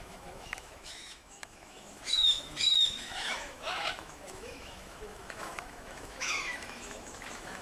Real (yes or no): no